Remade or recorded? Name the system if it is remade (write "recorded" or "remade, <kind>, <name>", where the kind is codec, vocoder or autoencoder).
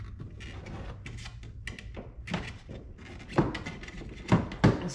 recorded